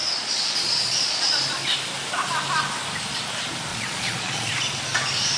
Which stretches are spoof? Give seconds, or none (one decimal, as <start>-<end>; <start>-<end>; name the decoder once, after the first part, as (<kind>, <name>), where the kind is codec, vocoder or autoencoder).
0.0-1.3 (vocoder, Vocos); 3.7-4.5